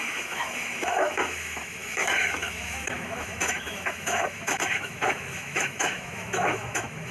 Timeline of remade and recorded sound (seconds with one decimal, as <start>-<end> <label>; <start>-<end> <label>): 0.0-7.1 remade